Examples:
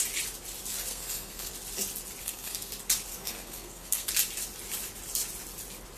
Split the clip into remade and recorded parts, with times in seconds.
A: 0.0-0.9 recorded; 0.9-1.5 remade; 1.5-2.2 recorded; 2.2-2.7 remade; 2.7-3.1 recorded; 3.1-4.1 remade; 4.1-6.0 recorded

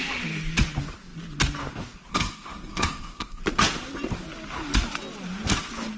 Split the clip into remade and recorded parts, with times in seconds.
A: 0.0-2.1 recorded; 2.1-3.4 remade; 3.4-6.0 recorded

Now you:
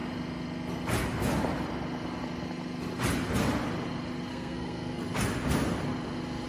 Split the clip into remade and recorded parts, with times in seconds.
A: 0.0-4.3 recorded; 4.3-5.0 remade; 5.0-6.5 recorded